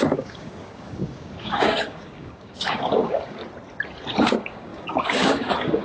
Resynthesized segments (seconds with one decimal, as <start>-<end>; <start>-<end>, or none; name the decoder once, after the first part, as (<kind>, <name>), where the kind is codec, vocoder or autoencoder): 0.0-3.4 (codec, DAC); 4.2-5.8